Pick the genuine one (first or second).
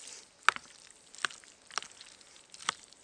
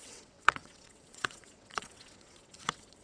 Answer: first